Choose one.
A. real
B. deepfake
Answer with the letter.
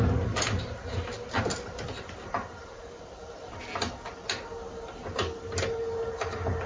A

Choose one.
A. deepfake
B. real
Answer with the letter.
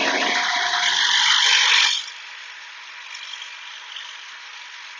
B